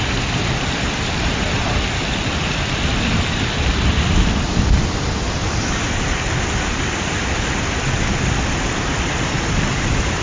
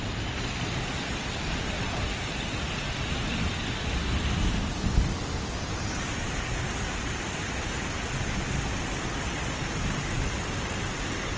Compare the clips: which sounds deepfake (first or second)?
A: first